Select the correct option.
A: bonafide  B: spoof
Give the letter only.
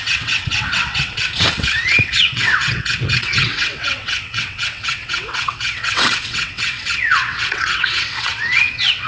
B